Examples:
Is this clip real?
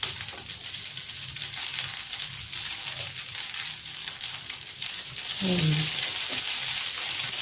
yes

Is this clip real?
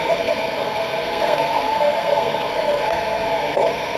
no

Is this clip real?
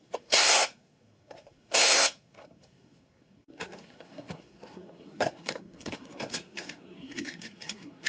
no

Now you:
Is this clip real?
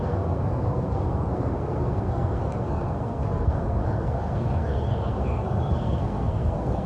no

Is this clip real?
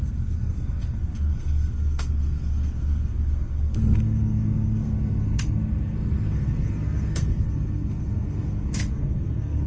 no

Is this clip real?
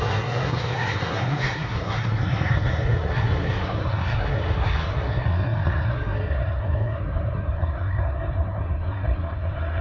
no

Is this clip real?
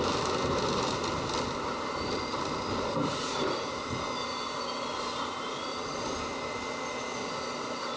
yes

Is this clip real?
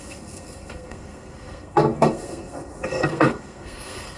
no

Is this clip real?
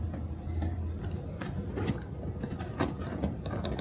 yes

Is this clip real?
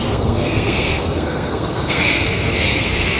no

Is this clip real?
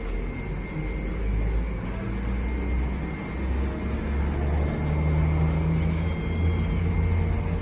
yes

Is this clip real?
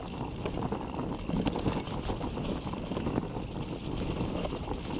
yes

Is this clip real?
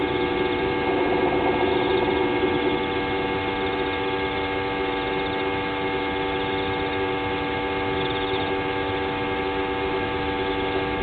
yes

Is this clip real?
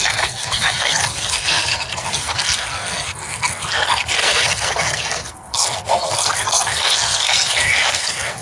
no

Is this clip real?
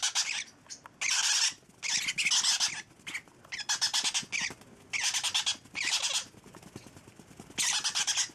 yes